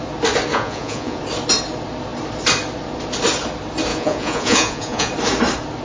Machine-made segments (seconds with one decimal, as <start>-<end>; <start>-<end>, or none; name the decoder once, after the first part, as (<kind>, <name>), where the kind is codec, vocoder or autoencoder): 0.5-1.2 (vocoder, Vocos); 3.9-5.1